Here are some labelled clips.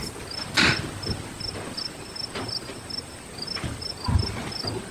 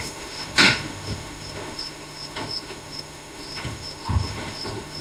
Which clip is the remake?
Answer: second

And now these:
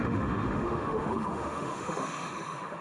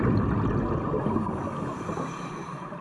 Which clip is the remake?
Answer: first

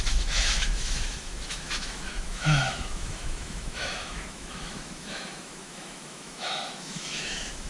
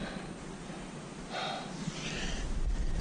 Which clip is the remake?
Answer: first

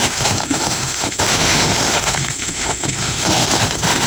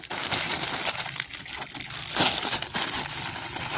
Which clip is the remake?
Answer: first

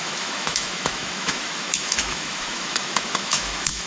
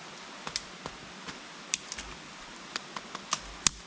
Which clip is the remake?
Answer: first